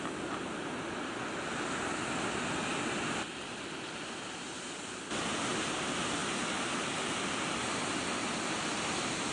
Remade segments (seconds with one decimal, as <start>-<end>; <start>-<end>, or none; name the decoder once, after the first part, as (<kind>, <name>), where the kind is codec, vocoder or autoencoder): none